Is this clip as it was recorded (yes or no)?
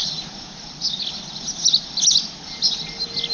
yes